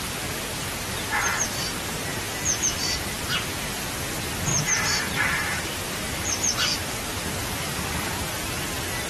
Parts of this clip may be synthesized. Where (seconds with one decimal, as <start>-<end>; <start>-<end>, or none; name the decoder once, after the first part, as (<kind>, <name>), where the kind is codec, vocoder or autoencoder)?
2.1-3.0 (vocoder, BigVGAN v2); 4.5-5.7